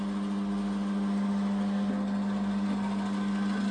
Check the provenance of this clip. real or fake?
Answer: real